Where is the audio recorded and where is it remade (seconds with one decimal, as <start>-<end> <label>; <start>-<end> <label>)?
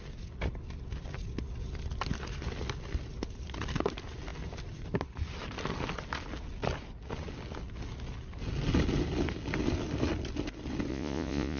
0.0-10.9 recorded; 10.9-11.6 remade